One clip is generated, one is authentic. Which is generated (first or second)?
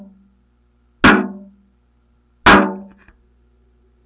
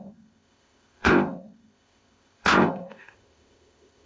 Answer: second